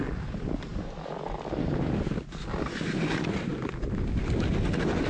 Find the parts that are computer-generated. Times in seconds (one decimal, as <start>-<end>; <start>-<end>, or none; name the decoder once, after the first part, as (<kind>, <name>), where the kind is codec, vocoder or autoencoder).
none